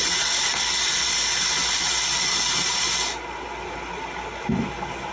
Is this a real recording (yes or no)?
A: yes